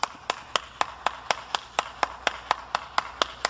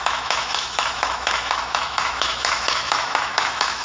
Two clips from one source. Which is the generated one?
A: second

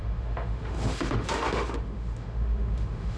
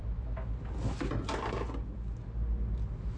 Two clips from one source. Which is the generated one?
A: first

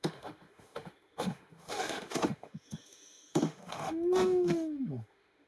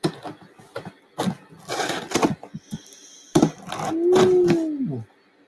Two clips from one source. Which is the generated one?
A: first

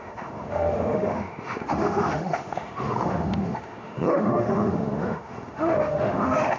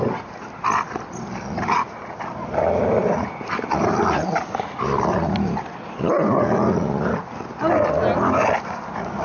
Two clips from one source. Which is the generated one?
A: first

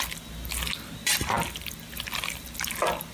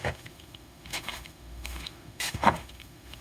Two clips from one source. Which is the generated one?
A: second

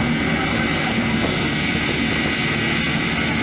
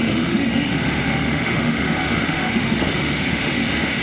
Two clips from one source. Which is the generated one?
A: second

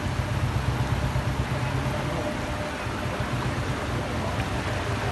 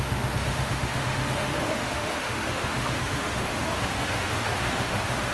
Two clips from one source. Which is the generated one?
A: second